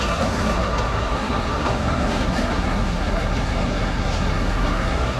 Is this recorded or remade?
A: remade